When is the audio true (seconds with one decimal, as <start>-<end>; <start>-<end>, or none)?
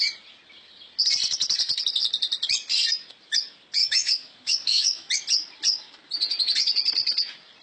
0.0-3.8; 5.1-7.6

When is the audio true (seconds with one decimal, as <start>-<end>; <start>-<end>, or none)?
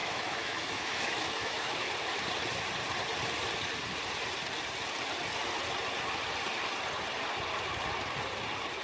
1.9-8.8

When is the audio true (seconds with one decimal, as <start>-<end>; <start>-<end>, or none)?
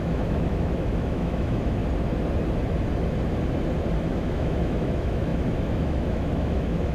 1.8-4.0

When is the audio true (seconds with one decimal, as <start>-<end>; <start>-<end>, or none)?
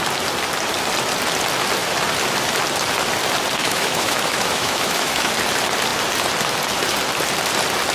0.0-3.6; 5.3-7.9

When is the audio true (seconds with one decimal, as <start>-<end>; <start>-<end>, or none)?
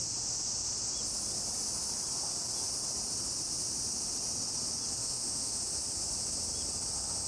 0.0-5.0; 5.6-7.3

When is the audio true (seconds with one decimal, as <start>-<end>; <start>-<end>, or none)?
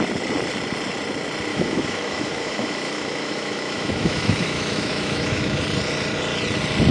0.0-1.5; 5.6-6.9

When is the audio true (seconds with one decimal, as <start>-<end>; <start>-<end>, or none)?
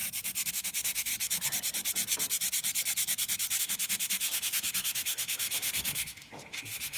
0.0-0.5; 1.1-3.6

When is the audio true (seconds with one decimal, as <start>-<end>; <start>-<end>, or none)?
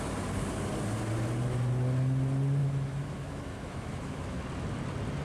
0.0-2.6; 4.4-5.2